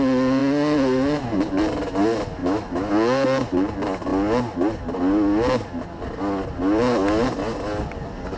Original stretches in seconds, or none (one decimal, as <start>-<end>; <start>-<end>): 0.0-2.4; 2.9-8.4